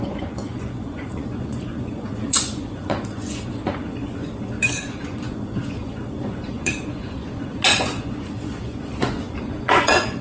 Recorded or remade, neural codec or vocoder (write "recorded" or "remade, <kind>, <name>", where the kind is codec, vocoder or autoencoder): remade, vocoder, Vocos